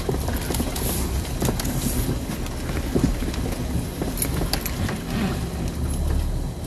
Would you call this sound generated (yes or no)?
no